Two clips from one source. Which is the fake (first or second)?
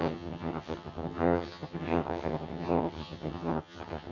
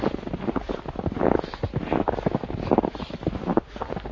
first